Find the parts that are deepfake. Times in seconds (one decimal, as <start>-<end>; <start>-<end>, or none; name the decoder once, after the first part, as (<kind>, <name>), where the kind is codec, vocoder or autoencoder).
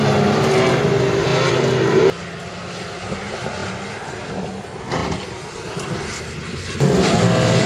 none